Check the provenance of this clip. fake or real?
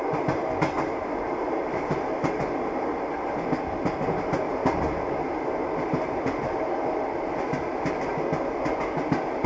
real